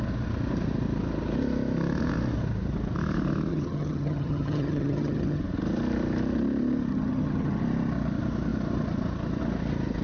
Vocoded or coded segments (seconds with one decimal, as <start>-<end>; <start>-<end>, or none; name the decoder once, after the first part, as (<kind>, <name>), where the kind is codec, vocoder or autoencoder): 3.5-5.4 (vocoder, HiFi-GAN); 6.9-7.6